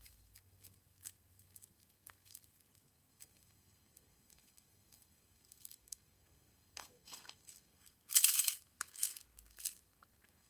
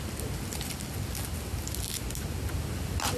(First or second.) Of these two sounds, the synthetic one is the first